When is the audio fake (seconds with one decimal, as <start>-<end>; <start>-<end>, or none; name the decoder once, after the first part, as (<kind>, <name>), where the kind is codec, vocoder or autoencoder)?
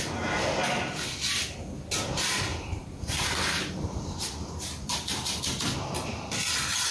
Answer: 2.5-5.4 (vocoder, BigVGAN v2)